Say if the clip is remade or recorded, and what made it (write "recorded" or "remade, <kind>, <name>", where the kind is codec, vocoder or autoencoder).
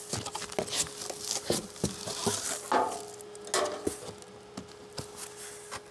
recorded